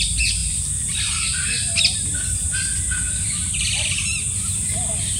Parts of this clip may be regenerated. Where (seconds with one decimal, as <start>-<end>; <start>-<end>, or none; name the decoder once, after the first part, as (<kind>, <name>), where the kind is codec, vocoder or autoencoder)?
none